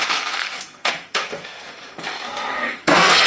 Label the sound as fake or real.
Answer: fake